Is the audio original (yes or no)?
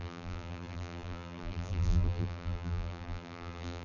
no